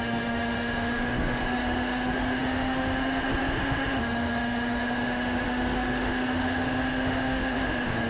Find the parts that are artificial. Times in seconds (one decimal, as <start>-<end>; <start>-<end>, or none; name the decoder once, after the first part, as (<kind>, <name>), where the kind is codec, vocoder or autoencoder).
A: 0.0-8.1 (autoencoder, DAC-VAE)